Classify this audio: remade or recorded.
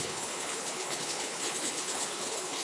remade